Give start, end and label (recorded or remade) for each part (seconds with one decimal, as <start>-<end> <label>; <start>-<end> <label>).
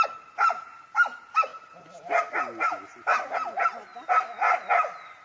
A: 0.0-5.2 recorded